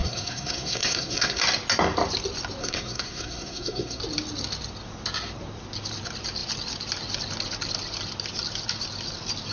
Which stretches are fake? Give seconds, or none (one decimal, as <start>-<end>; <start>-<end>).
0.0-1.4; 2.6-4.0